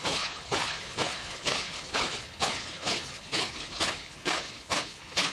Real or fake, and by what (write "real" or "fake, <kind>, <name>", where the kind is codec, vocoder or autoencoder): fake, codec, HILCodec